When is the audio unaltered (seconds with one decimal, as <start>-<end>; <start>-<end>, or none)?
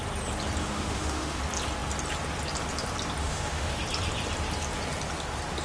0.0-0.6; 1.4-3.2; 3.8-5.6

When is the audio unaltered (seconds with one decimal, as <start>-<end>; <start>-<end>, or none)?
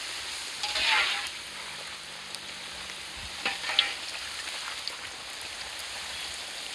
0.0-6.7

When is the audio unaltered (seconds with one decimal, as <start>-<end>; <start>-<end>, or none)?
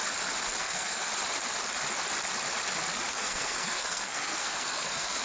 0.0-0.6; 1.1-3.1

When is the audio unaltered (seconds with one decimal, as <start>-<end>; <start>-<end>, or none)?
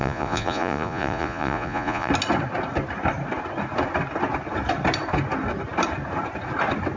2.1-7.0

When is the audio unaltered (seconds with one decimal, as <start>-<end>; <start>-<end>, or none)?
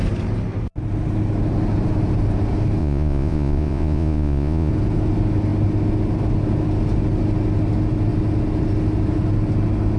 0.0-2.8; 4.7-10.0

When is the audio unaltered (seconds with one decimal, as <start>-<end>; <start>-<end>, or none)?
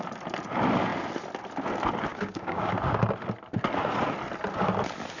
0.0-2.1; 2.7-5.2